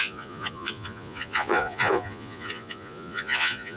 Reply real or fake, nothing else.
fake